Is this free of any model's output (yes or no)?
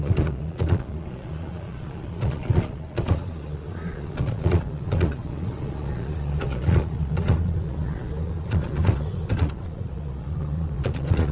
no